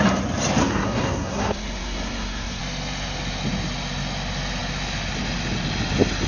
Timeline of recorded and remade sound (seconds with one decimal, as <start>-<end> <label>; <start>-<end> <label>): 0.0-0.6 recorded; 0.6-2.6 remade; 2.6-6.3 recorded